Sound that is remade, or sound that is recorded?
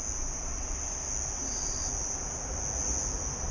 recorded